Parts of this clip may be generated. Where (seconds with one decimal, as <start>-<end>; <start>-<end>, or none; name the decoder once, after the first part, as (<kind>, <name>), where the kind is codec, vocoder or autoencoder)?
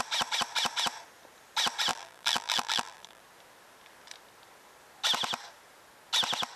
1.9-3.2 (vocoder, BigVGAN v2)